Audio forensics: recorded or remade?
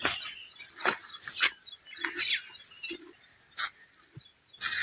recorded